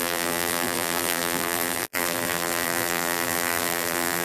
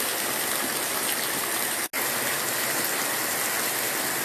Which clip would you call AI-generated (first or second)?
first